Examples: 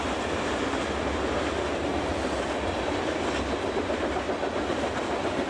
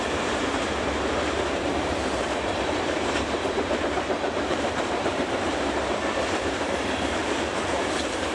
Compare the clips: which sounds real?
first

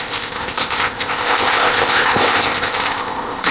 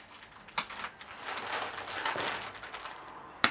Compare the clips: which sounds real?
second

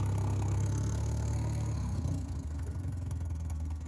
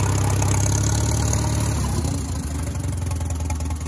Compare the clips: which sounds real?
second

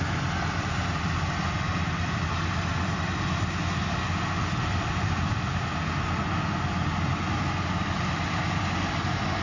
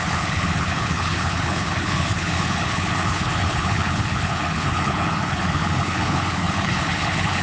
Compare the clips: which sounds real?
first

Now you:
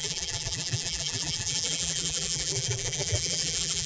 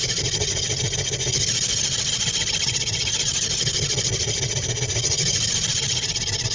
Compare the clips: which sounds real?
second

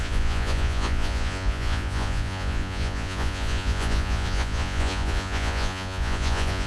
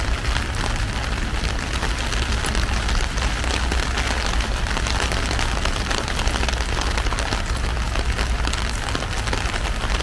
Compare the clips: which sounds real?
second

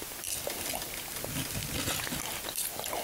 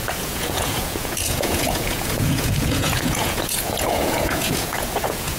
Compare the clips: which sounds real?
first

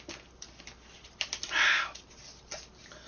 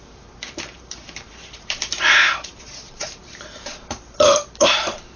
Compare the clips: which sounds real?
first